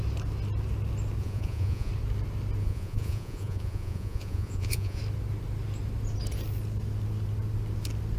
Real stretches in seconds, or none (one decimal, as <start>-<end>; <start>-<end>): 0.0-1.2; 1.9-2.6; 5.0-8.2